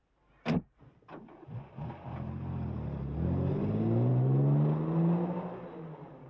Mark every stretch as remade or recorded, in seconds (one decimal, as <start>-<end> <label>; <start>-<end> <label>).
0.0-6.3 recorded

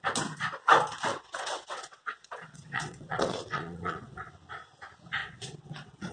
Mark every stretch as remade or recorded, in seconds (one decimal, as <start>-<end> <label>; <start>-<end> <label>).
0.0-1.1 recorded; 1.1-4.3 remade; 4.3-5.2 recorded; 5.2-6.1 remade

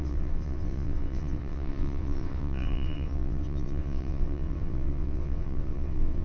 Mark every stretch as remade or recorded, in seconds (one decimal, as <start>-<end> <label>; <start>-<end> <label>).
0.0-6.2 remade